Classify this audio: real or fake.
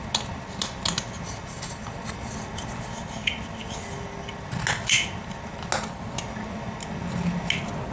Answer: real